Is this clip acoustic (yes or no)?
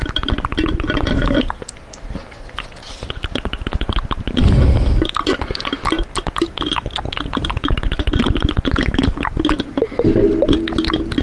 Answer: yes